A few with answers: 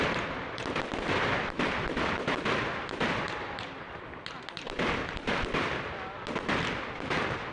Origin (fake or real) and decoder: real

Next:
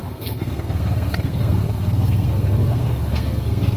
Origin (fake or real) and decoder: fake, codec, SNAC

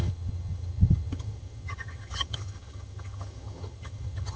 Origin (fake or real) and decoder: fake, vocoder, HiFi-GAN